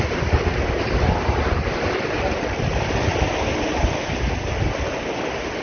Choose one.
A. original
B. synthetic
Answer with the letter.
A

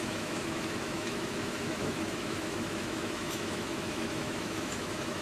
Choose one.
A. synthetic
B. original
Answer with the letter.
A